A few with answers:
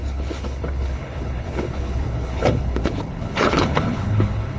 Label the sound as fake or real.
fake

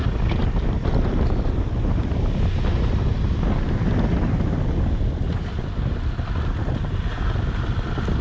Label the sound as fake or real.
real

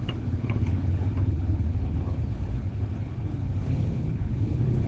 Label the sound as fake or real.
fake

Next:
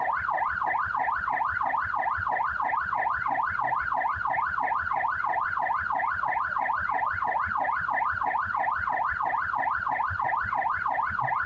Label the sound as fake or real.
real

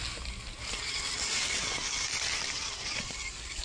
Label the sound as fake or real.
real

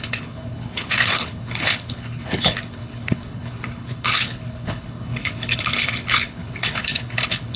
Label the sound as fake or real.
fake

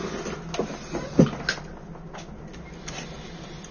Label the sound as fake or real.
real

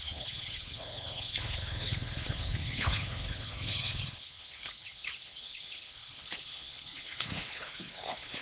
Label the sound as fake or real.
fake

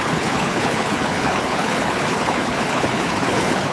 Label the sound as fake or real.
fake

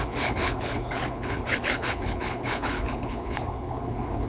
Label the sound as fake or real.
fake